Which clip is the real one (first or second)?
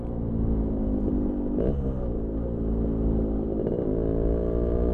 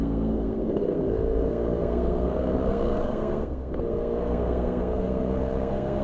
first